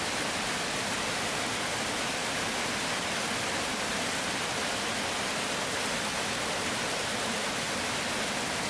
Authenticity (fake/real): real